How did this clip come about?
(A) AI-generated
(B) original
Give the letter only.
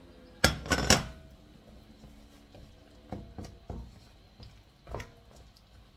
B